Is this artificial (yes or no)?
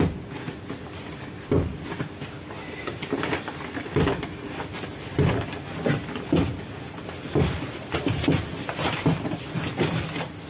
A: no